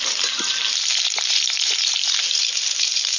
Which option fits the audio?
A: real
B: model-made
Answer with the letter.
B